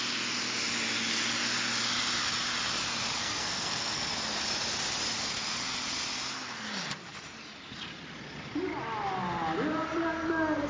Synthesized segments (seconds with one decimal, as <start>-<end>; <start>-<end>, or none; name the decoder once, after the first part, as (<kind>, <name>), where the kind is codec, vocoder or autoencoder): 3.2-4.1 (codec, SNAC)